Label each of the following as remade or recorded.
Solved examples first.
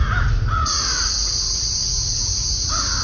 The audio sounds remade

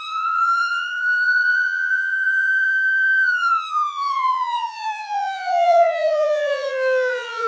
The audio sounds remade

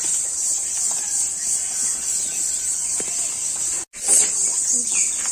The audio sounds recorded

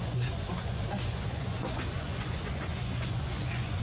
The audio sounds remade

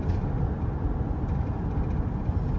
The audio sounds recorded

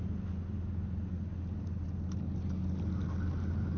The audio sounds recorded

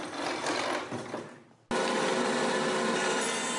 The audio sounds recorded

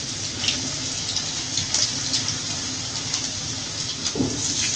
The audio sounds recorded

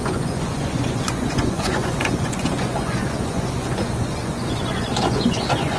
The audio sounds remade